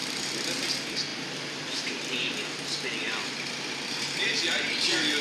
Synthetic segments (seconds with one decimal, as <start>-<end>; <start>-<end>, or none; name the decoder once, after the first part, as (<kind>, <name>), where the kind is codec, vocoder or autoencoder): 0.0-0.7 (vocoder, BigVGAN v2); 1.1-4.2